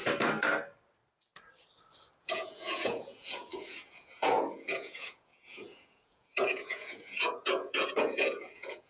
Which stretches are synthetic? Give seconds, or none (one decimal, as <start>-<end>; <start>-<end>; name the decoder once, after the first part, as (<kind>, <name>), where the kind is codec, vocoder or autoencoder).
2.2-8.9 (vocoder, Vocos)